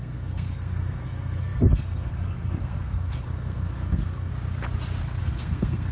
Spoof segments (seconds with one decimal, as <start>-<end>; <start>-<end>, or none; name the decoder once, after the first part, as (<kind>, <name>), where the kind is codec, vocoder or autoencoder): 0.0-4.3 (codec, SNAC); 5.2-5.9